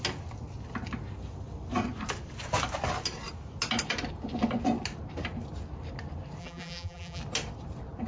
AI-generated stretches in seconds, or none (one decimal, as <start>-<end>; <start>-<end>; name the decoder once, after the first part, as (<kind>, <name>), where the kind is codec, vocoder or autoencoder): 6.4-7.2 (vocoder, BigVGAN v2)